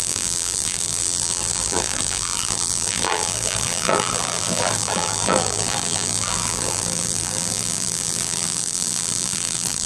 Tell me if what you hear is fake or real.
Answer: fake